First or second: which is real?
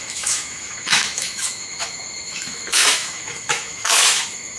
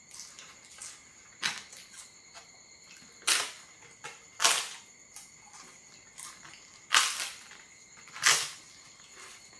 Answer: second